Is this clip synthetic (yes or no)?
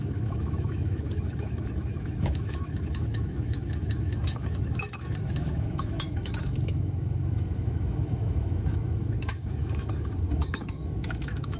yes